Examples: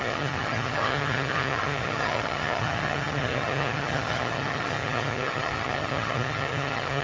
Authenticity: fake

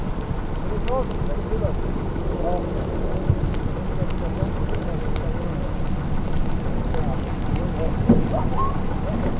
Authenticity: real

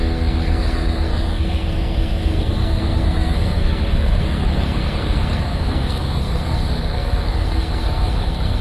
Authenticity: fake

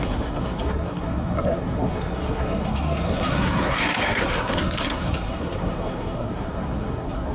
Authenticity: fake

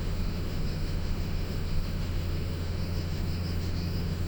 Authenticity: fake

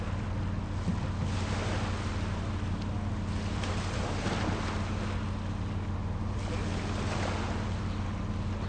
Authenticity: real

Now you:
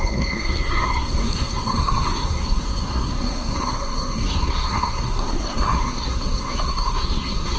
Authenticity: fake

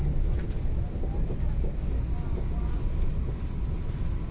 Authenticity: real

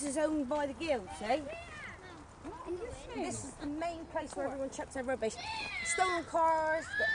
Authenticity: real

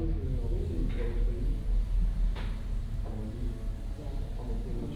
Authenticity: real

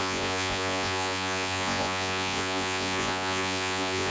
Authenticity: fake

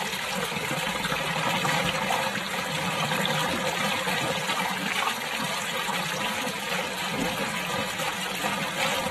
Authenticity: real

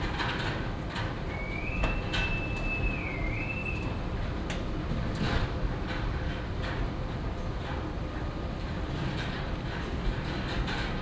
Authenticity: real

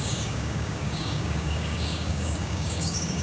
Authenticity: fake